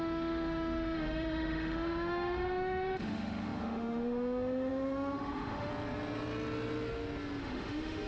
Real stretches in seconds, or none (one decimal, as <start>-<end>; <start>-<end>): 5.7-7.4